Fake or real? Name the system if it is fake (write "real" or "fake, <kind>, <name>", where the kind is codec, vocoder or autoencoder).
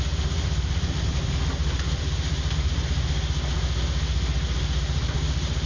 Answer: real